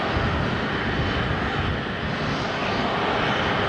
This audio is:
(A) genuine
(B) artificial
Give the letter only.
A